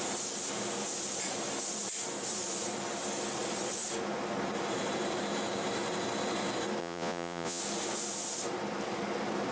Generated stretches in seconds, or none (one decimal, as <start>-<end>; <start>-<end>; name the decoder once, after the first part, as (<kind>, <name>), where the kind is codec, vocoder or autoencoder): 6.8-7.6 (vocoder, Vocos)